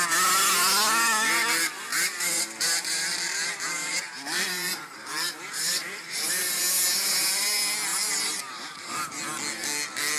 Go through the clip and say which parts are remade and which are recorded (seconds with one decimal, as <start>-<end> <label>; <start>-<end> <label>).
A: 0.0-1.9 recorded; 1.9-6.6 remade; 6.6-7.9 recorded; 7.9-9.2 remade; 9.2-10.2 recorded